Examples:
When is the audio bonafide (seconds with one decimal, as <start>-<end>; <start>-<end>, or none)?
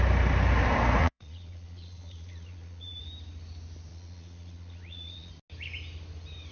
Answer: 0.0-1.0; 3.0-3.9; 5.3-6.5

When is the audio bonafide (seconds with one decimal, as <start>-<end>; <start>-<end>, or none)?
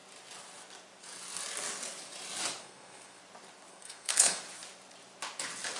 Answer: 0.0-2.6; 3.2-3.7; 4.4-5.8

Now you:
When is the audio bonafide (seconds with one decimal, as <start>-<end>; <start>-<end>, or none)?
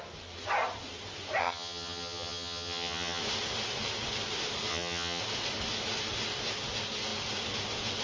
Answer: 0.0-1.4; 3.2-4.7; 5.2-8.0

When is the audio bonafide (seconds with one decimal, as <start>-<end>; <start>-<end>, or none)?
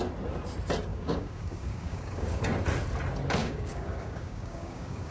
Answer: 0.0-0.9; 2.4-3.4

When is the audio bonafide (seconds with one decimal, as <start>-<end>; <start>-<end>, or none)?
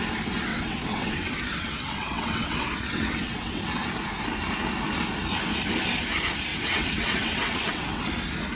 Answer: 0.0-0.5; 3.6-6.5; 8.0-8.6